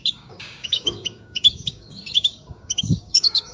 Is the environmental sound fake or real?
fake